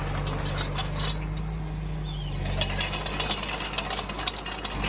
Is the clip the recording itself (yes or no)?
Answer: yes